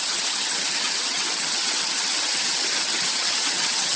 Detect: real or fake fake